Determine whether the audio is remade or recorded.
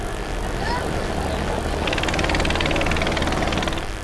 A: recorded